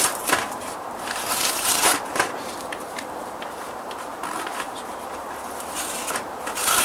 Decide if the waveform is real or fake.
fake